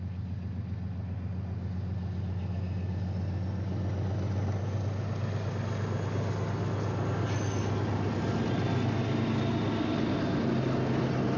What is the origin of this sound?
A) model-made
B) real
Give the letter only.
B